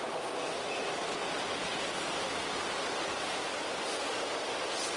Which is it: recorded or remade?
recorded